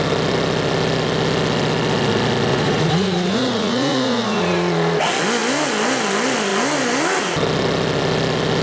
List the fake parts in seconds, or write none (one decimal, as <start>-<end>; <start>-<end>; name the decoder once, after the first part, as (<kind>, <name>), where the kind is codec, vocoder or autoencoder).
2.5-5.0 (vocoder, Vocos)